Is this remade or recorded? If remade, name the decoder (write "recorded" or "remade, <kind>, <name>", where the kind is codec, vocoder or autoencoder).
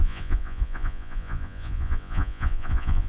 remade, vocoder, Vocos